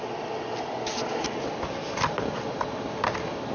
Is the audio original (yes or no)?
yes